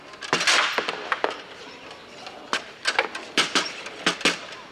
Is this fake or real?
real